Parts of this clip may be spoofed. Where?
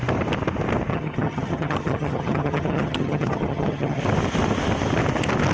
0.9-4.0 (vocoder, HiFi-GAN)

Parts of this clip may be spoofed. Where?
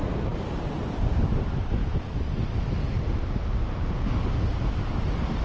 0.0-0.7 (vocoder, BigVGAN v2)